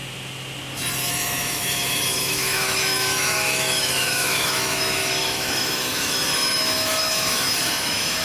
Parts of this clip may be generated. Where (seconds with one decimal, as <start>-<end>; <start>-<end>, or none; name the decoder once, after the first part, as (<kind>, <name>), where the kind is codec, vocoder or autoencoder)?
1.1-8.2 (autoencoder, DAC-VAE)